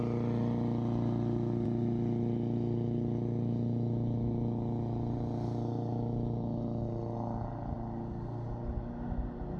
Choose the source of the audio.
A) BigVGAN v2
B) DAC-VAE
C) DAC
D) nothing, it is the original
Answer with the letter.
D